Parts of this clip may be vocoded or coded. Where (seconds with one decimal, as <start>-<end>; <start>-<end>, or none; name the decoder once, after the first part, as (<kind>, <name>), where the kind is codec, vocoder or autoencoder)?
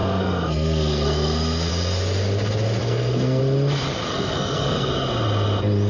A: 0.0-1.7 (codec, SNAC); 2.8-3.4; 4.0-4.9